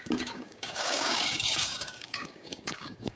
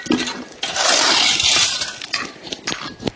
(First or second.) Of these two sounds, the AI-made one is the first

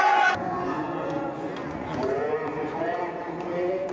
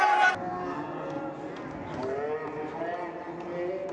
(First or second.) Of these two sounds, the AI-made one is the first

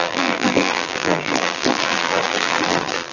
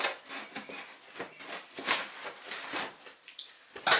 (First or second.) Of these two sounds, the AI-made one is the first